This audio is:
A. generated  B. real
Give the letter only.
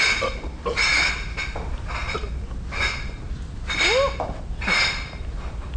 B